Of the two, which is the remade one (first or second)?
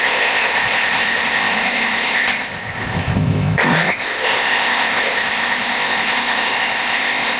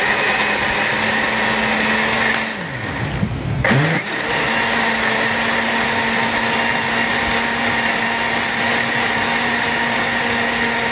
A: first